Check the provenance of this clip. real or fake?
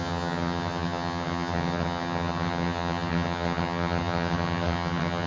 fake